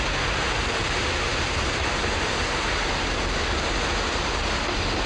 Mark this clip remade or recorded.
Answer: recorded